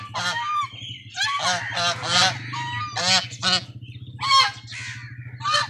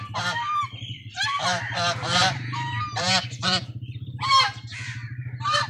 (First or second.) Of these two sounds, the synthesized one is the second